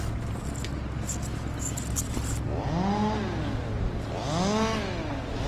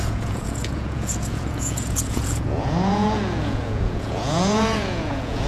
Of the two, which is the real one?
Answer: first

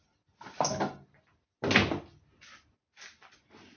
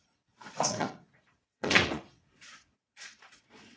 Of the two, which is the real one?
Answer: first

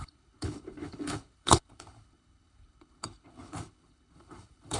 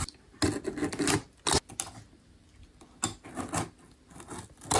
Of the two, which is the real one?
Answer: second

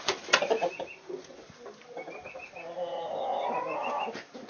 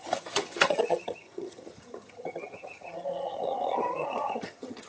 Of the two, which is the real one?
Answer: first